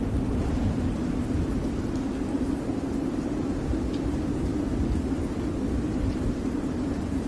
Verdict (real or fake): real